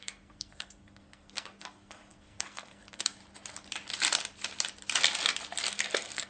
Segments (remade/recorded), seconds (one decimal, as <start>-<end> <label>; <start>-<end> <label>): 0.0-3.2 remade; 3.2-5.7 recorded; 5.7-6.3 remade